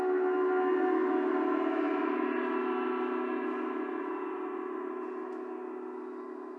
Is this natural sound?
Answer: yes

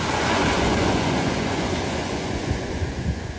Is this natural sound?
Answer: no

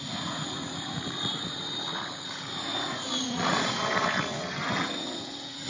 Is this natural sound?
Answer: no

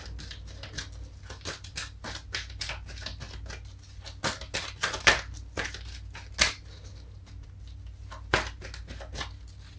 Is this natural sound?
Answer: yes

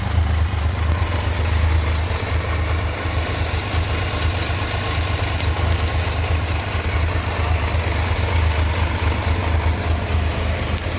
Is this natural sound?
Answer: yes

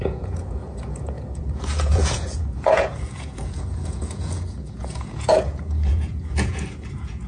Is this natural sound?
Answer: no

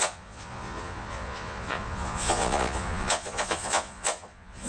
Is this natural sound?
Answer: no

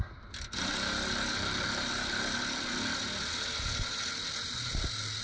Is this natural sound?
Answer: yes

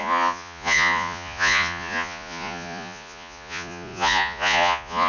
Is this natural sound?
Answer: no